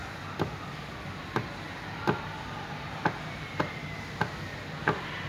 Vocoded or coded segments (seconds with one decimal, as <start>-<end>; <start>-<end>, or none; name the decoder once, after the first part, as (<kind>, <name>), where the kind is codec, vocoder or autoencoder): 0.0-1.9 (vocoder, BigVGAN v2)